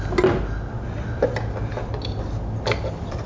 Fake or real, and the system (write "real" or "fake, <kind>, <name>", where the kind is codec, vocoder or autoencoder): real